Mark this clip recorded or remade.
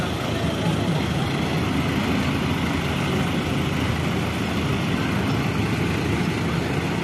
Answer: recorded